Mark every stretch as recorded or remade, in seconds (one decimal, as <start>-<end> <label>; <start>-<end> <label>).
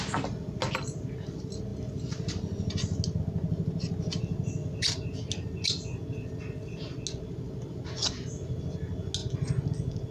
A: 0.0-10.1 recorded